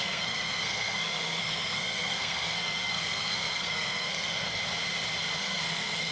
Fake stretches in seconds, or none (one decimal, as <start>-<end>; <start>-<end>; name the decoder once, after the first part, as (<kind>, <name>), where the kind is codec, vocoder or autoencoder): 0.0-4.6 (codec, SNAC); 5.4-6.1